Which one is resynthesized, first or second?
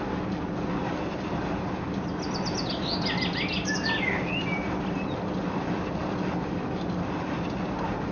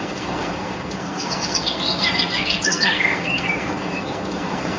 second